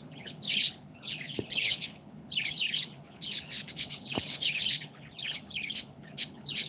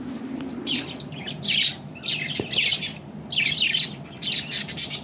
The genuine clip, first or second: second